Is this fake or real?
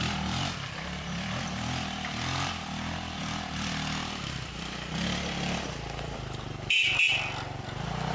fake